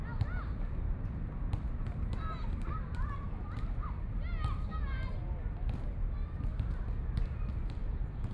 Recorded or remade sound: recorded